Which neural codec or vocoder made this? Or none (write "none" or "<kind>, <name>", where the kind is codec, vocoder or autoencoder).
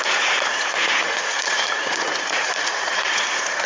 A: vocoder, Vocos